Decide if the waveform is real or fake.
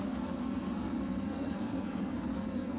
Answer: fake